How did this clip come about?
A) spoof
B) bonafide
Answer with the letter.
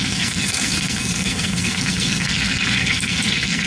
A